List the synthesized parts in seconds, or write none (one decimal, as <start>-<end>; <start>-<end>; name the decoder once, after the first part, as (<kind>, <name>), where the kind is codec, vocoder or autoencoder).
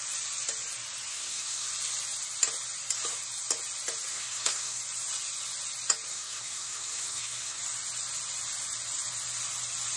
1.1-1.7 (codec, SNAC); 4.1-4.8; 6.1-7.6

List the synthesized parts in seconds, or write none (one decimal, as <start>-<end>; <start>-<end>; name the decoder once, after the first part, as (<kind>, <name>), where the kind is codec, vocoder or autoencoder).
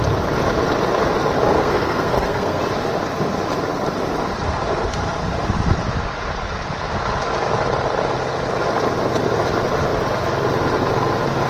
1.5-2.6 (codec, SNAC)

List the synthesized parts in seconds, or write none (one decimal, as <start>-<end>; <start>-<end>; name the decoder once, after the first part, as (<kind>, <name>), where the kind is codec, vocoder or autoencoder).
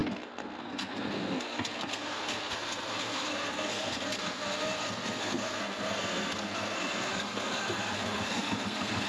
0.0-9.1 (codec, SNAC)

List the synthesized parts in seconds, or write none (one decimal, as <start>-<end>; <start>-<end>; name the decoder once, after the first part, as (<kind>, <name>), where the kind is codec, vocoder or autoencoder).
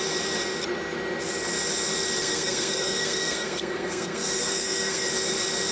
2.2-5.1 (codec, SNAC)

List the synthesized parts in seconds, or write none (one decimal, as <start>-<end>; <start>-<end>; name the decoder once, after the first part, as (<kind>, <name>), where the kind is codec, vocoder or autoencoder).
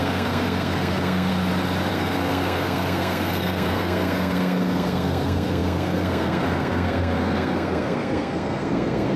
0.0-1.3 (codec, SNAC); 1.9-9.2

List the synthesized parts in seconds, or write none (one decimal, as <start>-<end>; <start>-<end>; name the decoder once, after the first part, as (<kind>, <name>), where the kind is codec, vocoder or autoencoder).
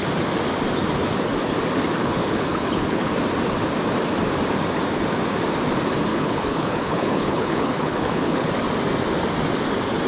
2.0-3.1 (codec, HILCodec); 6.1-8.5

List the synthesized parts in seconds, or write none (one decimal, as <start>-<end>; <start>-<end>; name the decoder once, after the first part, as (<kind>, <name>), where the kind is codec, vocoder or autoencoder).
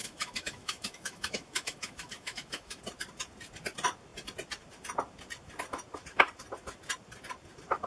0.0-2.8 (autoencoder, DAC-VAE)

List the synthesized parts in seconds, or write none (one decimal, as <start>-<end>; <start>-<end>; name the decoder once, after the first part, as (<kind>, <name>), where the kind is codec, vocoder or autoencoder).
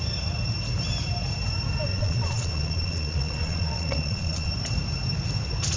1.9-4.5 (vocoder, Vocos)